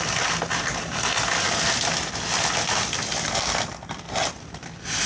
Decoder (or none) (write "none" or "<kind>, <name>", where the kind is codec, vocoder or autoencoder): none